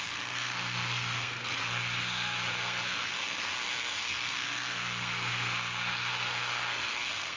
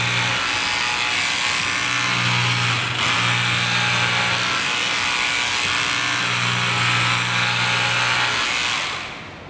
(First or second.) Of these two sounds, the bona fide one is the second